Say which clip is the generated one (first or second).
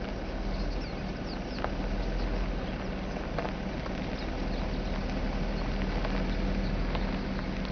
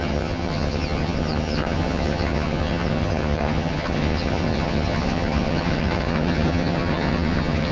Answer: second